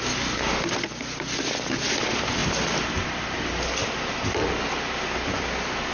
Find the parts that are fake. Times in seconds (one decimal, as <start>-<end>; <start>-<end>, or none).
none